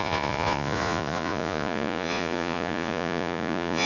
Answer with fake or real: fake